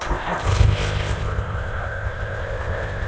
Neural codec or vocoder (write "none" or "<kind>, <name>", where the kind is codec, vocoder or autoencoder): codec, ZipCodec